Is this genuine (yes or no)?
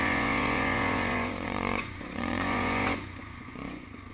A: no